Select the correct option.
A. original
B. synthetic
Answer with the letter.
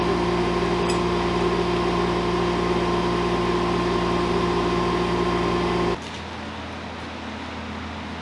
A